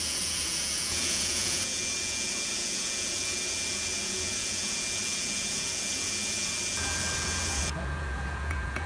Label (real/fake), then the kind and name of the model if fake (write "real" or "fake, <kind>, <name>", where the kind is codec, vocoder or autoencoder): fake, vocoder, Vocos